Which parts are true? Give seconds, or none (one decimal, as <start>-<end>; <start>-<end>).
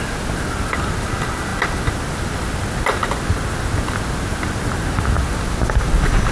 0.0-6.3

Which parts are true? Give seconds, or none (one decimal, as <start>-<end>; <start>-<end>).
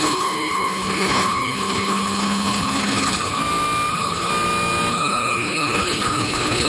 3.4-3.9; 4.3-4.9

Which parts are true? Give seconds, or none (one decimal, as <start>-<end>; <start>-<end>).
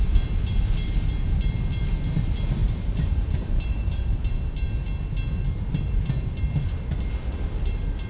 0.0-2.6; 4.7-8.1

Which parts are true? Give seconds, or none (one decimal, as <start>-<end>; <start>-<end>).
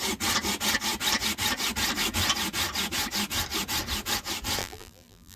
0.0-4.6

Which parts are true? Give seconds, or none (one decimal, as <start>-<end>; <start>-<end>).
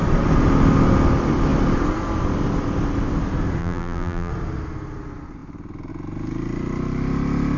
0.0-3.6; 4.3-7.6